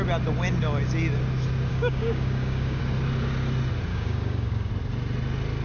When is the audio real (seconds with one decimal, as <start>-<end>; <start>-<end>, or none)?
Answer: 0.0-1.7; 2.8-3.9; 4.7-5.6